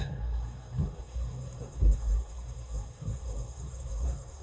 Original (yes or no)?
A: no